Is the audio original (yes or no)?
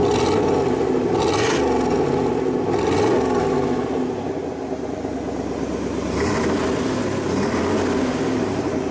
yes